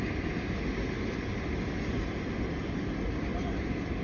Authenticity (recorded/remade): recorded